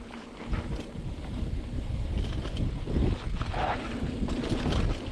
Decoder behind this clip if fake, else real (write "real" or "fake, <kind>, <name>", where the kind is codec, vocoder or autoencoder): real